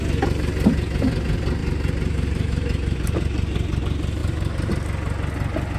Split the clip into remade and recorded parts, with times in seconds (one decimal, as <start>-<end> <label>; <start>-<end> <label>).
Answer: 0.0-1.6 recorded; 1.6-3.8 remade; 3.8-4.2 recorded; 4.2-4.7 remade; 4.7-5.8 recorded